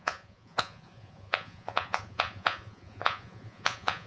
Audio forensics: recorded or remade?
remade